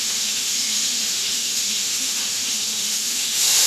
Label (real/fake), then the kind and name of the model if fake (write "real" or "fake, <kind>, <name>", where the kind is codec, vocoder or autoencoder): fake, autoencoder, DAC-VAE